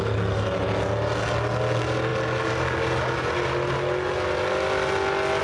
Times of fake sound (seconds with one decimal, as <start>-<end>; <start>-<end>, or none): none